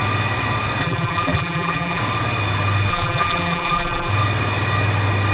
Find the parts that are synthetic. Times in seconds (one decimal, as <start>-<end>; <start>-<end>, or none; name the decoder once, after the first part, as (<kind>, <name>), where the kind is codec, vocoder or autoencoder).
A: 0.8-2.0 (vocoder, BigVGAN v2); 2.9-4.1